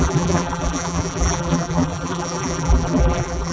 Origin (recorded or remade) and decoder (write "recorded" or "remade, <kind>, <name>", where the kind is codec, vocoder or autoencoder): remade, vocoder, BigVGAN v2